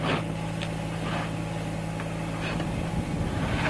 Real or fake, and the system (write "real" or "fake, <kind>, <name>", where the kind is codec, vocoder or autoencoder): real